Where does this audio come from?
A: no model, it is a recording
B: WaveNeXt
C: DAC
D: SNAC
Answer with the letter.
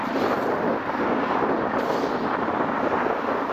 A